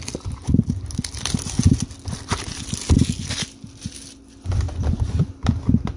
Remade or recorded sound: recorded